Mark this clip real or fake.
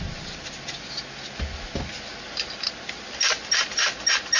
real